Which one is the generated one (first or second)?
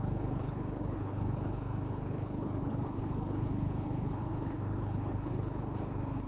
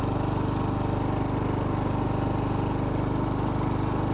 first